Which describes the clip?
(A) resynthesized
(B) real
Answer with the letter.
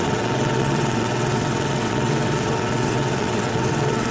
A